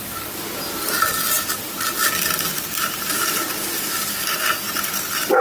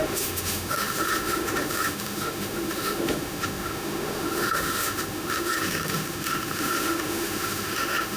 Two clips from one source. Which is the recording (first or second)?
first